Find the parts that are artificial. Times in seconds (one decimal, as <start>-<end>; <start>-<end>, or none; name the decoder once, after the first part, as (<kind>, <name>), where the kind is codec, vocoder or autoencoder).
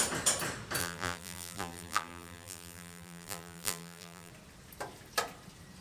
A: 0.8-4.3 (vocoder, BigVGAN v2)